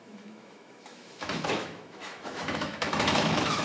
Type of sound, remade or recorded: remade